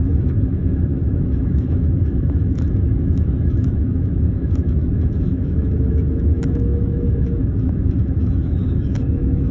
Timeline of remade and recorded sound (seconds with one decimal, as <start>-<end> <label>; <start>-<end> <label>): 0.0-9.5 remade